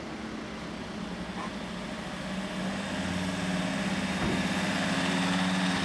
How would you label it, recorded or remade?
recorded